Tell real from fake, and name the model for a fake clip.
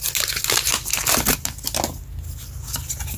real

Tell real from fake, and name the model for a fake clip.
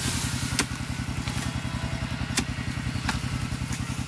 real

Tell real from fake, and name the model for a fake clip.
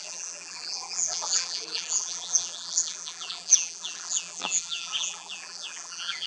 fake, vocoder, BigVGAN v2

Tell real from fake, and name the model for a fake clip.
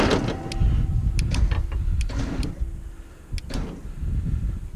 real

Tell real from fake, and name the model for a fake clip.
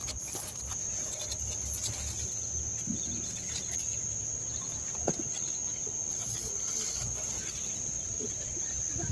real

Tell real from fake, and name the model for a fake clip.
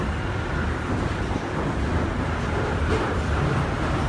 real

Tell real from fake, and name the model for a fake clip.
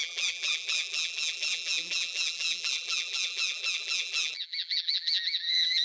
fake, vocoder, BigVGAN v2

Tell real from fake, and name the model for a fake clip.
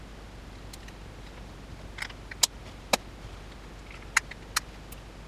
real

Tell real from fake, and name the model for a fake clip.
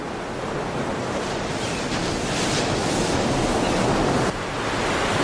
real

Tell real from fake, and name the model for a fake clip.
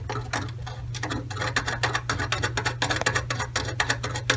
real